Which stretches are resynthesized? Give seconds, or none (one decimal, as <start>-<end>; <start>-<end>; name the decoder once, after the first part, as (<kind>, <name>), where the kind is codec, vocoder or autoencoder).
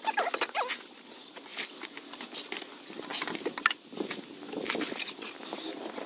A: none